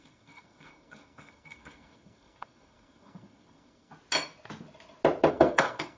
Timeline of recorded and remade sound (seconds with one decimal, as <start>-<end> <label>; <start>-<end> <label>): 0.0-3.9 remade; 3.9-5.3 recorded; 5.3-6.0 remade